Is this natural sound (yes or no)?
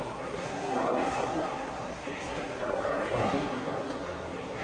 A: no